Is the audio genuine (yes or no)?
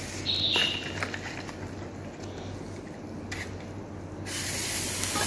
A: yes